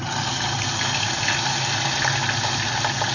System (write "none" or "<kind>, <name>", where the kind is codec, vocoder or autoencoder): none